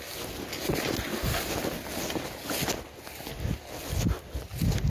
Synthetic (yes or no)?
no